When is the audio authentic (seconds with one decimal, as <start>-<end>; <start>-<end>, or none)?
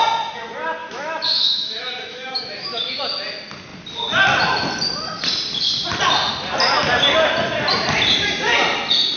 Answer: 0.0-0.8; 3.0-9.2